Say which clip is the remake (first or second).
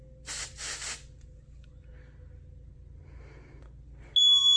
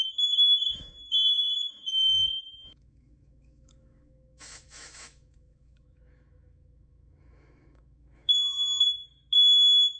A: second